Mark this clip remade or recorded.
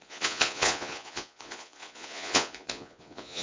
remade